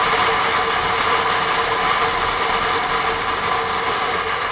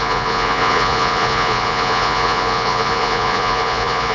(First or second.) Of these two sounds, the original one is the first